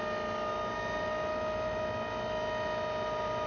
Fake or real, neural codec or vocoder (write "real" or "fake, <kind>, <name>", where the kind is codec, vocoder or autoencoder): real